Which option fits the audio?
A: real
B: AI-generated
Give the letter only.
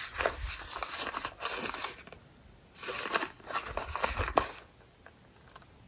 A